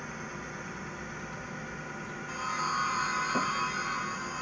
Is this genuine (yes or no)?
yes